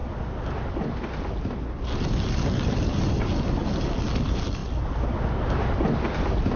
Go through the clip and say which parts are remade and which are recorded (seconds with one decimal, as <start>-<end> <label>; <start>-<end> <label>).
0.0-4.0 recorded; 4.0-4.6 remade; 4.6-6.0 recorded; 6.0-6.6 remade